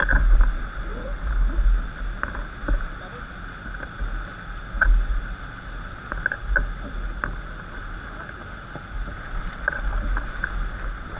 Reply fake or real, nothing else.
real